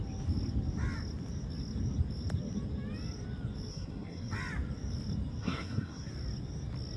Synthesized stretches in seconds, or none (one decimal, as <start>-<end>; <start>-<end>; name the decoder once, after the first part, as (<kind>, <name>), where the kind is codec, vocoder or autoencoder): 3.7-4.3 (codec, SNAC); 5.4-6.1